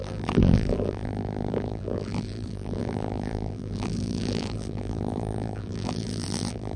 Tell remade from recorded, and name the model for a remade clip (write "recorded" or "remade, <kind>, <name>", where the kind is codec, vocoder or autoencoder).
remade, vocoder, BigVGAN v2